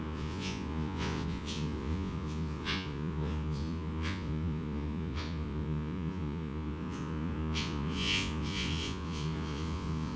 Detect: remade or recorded remade